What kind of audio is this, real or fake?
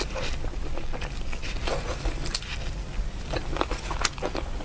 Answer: real